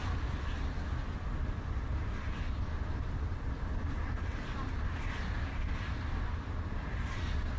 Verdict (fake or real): real